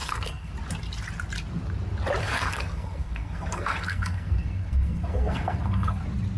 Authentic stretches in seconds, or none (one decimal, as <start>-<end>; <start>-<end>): 0.5-2.2; 6.0-6.4